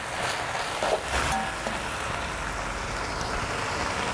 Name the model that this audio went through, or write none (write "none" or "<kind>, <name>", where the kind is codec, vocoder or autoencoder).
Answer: none